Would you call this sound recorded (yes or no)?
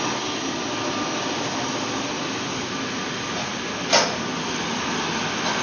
yes